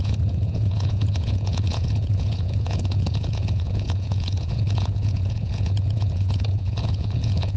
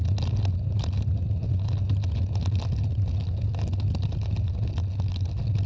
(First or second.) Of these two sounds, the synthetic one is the first